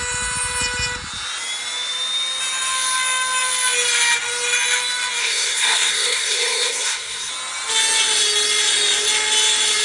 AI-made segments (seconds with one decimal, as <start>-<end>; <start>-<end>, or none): 5.2-7.3